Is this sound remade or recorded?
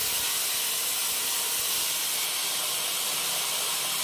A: recorded